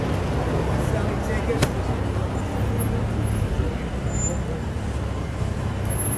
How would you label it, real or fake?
real